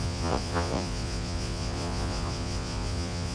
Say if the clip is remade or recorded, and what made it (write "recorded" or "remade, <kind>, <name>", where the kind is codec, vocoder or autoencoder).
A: remade, vocoder, Vocos